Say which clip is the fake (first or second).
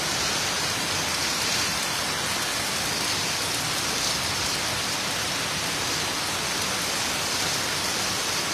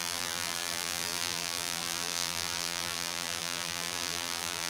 second